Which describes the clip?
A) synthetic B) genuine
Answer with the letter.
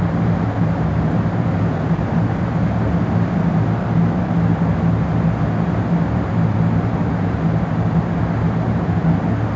B